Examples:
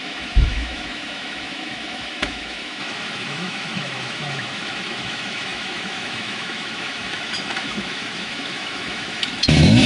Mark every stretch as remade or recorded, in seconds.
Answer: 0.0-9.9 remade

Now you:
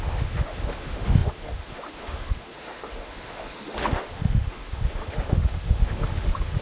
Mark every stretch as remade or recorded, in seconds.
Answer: 0.0-6.6 remade

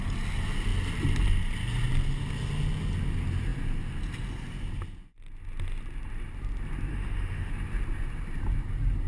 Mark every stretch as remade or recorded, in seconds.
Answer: 0.0-6.9 recorded; 6.9-7.5 remade; 7.5-9.1 recorded

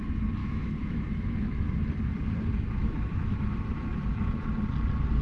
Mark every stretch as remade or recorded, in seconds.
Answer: 0.0-0.4 recorded; 0.4-1.8 remade; 1.8-2.8 recorded; 2.8-3.9 remade; 3.9-5.2 recorded

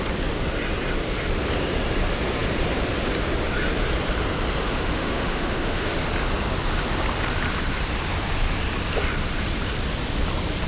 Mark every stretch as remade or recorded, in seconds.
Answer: 0.0-4.6 recorded; 4.6-6.1 remade; 6.1-10.7 recorded

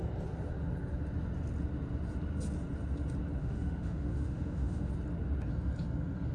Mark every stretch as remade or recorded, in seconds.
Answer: 0.0-3.4 recorded; 3.4-4.9 remade; 4.9-6.3 recorded

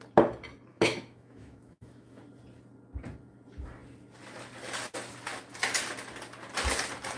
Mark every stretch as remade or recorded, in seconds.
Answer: 0.0-0.7 recorded; 0.7-2.2 remade; 2.2-7.2 recorded